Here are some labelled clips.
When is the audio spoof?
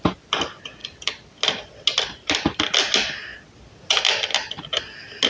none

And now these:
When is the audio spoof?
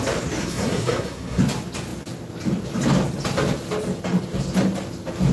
0.4-1.4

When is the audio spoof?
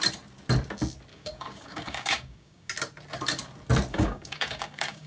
1.1-2.7; 3.9-5.1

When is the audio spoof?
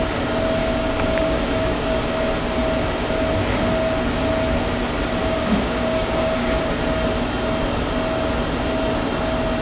0.6-2.0; 5.2-6.6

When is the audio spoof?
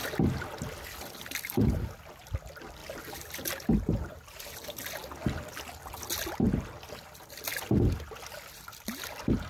none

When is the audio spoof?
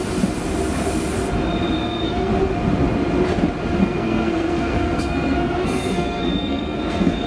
1.8-2.3; 3.8-7.3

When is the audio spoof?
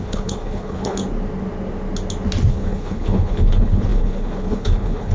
0.0-1.0; 2.5-5.1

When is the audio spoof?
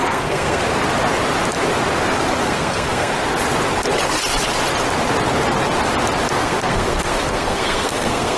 0.0-0.6; 2.4-3.1; 6.3-8.4